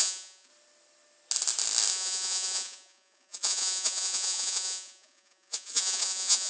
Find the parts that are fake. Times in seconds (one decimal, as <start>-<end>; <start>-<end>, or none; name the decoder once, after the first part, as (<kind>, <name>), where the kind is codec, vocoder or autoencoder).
0.0-0.5 (vocoder, Vocos); 1.9-6.5